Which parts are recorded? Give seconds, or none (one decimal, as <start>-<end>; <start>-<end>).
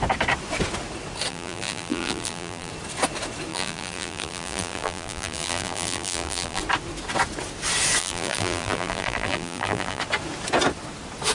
0.0-1.3; 2.7-3.5; 6.6-8.0; 10.0-11.3